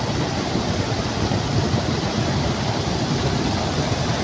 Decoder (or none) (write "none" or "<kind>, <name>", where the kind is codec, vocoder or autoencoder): none